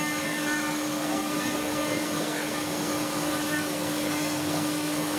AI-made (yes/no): yes